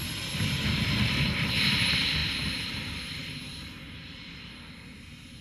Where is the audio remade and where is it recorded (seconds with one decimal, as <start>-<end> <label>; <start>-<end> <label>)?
0.0-5.4 recorded